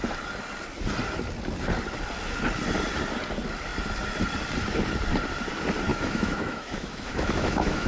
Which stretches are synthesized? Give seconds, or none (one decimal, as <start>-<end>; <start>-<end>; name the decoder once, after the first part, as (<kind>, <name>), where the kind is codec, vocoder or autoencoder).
5.9-7.9 (autoencoder, DAC-VAE)

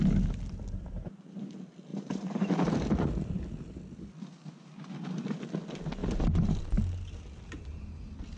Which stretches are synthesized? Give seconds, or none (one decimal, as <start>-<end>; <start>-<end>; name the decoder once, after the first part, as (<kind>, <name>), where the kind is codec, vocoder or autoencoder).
1.9-2.5 (vocoder, BigVGAN v2); 6.0-6.6

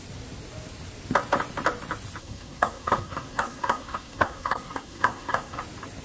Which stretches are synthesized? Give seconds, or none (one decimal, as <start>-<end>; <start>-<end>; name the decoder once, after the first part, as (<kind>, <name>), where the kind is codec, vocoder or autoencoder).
2.2-5.6 (codec, SNAC)

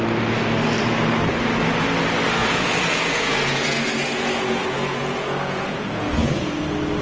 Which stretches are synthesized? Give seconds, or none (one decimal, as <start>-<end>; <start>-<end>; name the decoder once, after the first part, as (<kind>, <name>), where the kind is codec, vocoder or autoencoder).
2.4-6.6 (vocoder, Vocos)